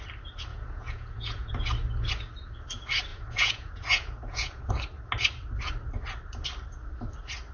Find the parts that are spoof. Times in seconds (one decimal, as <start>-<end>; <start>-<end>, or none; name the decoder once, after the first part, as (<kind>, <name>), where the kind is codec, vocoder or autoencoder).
0.5-1.5 (vocoder, Vocos); 3.1-4.7